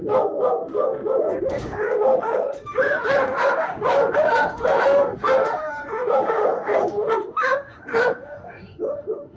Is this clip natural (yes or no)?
no